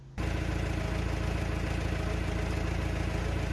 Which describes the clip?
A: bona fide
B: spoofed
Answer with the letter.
A